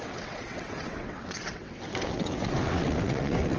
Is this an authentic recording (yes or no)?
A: no